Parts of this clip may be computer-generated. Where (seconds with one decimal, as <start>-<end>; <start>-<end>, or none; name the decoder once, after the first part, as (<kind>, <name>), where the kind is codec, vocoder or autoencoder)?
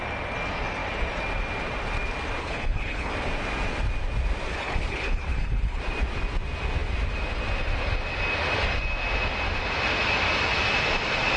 2.4-3.1 (codec, HILCodec); 4.5-5.8